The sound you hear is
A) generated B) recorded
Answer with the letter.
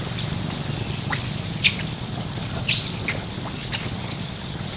A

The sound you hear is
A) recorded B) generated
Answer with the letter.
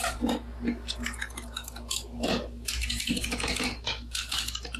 B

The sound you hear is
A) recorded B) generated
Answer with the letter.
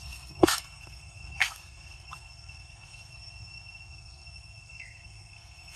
B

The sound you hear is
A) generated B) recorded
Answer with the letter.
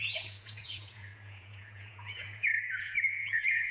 A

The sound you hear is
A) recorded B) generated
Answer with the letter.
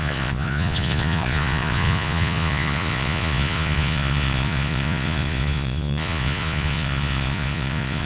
B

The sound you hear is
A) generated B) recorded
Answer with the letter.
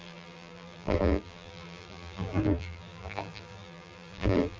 A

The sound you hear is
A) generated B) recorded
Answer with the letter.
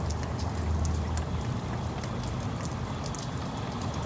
B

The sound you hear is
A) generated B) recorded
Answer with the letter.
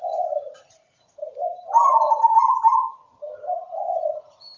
A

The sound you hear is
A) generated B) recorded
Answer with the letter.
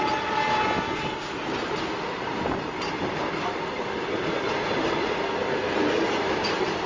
B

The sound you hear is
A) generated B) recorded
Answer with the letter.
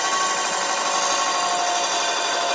B